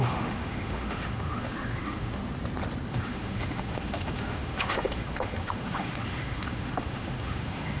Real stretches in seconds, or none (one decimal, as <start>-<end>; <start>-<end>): 2.2-2.9